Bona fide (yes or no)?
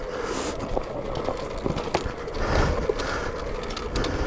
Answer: yes